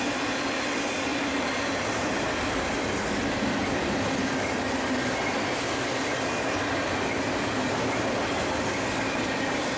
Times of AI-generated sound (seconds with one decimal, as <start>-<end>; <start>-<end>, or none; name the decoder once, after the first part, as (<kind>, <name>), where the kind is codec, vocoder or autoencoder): 1.1-2.3 (vocoder, BigVGAN v2)